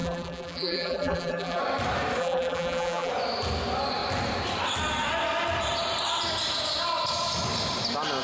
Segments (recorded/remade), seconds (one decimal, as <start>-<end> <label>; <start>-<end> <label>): 0.0-1.6 remade; 1.6-2.2 recorded; 2.2-3.1 remade; 3.1-8.2 recorded